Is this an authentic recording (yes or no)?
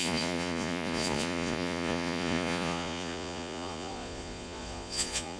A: no